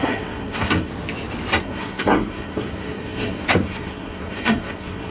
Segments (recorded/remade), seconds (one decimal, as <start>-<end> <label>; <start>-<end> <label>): 0.0-0.9 remade; 0.9-1.6 recorded; 1.6-5.1 remade